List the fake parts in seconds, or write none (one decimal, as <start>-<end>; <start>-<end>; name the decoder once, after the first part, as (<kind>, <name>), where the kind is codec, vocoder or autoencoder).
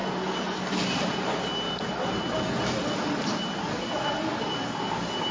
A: none